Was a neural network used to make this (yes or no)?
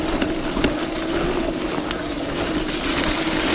no